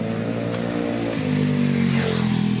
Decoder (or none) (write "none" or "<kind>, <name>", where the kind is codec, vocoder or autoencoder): none